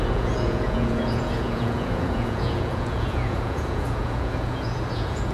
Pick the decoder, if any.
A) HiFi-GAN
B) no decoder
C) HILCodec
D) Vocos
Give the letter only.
D